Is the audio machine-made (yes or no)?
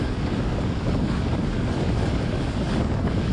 yes